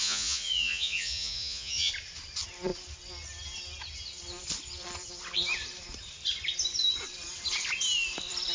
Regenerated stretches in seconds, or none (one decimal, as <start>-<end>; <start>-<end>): 0.0-1.9